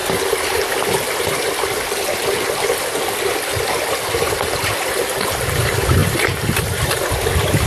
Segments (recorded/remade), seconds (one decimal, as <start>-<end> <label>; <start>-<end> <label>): 0.0-7.7 recorded

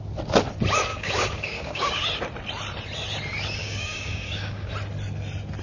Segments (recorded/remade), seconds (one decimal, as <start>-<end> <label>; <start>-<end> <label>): 0.0-0.9 recorded; 0.9-2.0 remade; 2.0-3.6 recorded; 3.6-4.7 remade; 4.7-5.6 recorded